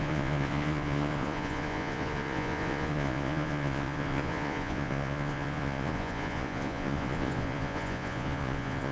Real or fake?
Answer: fake